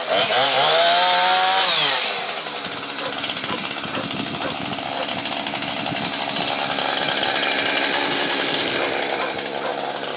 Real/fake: fake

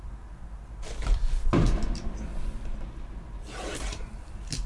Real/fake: fake